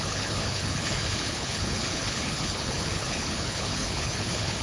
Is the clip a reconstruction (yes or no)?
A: yes